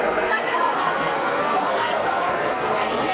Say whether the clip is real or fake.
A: fake